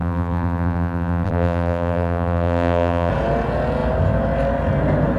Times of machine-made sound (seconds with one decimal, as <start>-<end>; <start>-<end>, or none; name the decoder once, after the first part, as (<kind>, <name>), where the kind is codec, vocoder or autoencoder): 0.0-3.1 (vocoder, BigVGAN v2)